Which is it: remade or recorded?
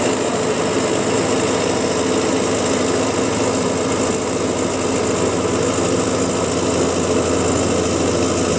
recorded